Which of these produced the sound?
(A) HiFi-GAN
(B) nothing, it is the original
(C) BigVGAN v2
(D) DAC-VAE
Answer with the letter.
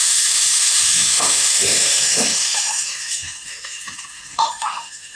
D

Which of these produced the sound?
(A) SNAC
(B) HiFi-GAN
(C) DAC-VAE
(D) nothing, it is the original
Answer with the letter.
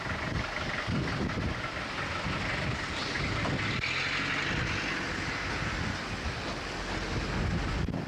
D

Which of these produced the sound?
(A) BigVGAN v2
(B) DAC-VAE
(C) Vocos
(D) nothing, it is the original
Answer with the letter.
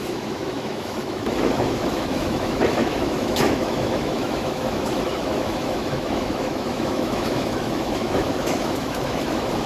B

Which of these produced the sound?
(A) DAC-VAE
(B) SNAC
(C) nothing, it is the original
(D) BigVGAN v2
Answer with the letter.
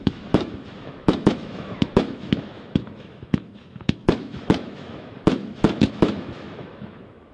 A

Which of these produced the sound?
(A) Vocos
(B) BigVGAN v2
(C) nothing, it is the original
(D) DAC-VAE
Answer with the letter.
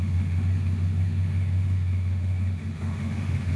D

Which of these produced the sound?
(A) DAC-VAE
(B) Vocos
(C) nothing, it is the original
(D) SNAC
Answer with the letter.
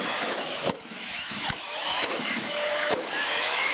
A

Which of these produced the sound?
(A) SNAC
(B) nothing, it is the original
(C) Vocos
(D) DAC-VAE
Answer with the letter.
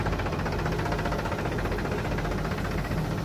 B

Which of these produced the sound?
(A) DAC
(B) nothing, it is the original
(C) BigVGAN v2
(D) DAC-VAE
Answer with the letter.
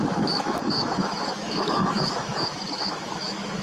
D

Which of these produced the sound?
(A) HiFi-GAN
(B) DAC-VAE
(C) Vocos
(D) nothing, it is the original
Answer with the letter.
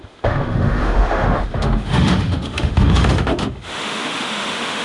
B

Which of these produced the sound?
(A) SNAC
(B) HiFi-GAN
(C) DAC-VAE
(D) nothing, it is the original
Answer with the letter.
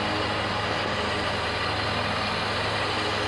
D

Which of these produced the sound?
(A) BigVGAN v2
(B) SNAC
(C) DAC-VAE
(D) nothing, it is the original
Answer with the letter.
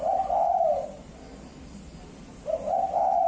D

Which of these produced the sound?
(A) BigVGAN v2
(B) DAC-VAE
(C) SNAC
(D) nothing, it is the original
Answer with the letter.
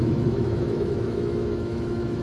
B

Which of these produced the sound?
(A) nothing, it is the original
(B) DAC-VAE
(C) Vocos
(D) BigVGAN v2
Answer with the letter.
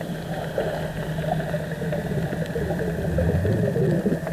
A